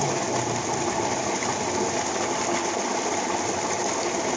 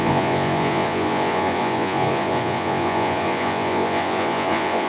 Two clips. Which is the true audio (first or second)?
first